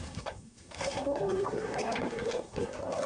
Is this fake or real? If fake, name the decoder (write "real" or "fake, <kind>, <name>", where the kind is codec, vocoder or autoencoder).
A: fake, codec, SNAC